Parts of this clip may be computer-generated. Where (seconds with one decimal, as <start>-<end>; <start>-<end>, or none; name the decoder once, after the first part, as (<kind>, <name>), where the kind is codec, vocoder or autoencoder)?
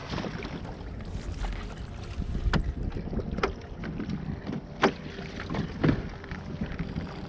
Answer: none